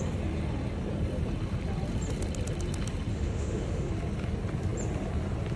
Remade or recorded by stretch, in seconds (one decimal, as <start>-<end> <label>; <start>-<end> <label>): 0.0-3.1 recorded; 3.1-3.9 remade; 3.9-5.6 recorded